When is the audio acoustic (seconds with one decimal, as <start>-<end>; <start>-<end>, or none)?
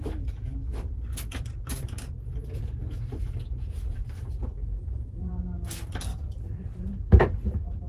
0.0-0.7; 5.3-6.1